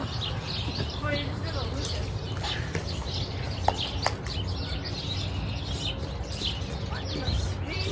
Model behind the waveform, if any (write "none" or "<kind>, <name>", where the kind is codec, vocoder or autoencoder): none